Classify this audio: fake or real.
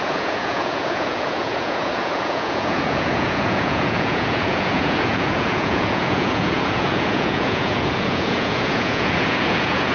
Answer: fake